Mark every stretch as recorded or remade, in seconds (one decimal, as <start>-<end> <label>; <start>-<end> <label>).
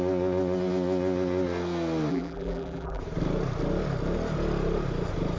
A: 0.0-2.1 recorded; 2.1-3.0 remade; 3.0-5.4 recorded